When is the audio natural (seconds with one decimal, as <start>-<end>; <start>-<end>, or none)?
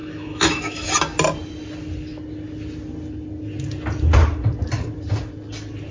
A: 0.9-5.9